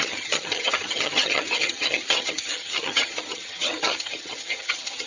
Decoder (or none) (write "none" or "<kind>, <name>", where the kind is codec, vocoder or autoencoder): vocoder, HiFi-GAN